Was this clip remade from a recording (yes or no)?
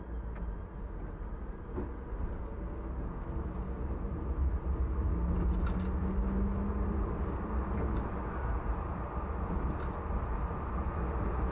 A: no